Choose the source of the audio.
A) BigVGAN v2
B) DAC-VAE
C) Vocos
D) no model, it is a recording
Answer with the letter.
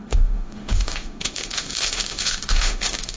B